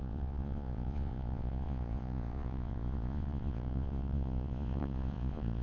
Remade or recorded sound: remade